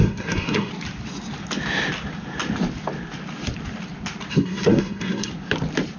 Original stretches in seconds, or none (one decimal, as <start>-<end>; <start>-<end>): 0.7-4.3; 5.3-6.0